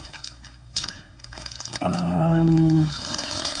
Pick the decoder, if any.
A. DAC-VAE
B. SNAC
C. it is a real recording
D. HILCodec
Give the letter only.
B